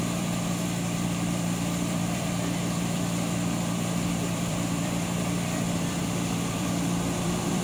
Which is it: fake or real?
fake